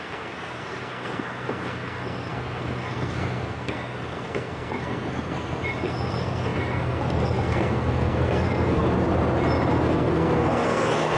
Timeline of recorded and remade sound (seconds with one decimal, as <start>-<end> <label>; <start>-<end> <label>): 0.0-8.8 remade; 8.8-9.7 recorded; 9.7-11.2 remade